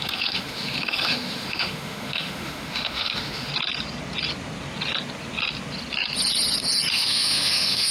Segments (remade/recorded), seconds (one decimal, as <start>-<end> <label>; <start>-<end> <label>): 0.0-3.5 remade; 3.5-6.9 recorded; 6.9-7.9 remade